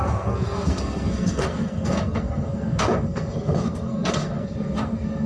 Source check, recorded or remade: remade